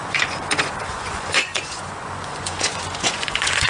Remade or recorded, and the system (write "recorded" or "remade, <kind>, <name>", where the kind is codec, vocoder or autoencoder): remade, vocoder, Vocos